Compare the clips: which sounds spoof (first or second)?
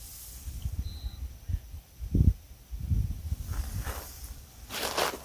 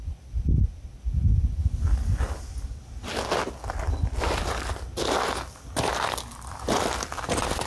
first